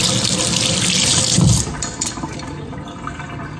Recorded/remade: recorded